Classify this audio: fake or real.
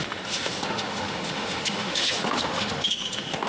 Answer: fake